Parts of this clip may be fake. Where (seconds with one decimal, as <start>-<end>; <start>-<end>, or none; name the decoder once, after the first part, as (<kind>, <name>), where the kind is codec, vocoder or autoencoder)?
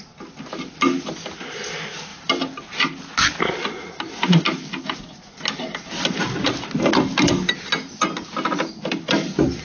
none